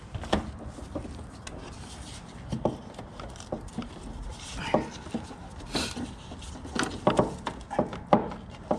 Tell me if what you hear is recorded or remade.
recorded